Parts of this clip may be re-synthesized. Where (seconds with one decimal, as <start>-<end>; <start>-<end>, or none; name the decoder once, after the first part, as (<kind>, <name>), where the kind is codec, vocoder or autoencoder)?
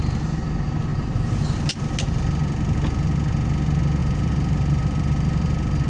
0.9-1.7 (vocoder, BigVGAN v2); 4.0-5.9